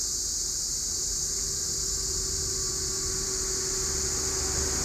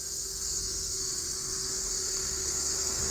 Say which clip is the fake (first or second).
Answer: second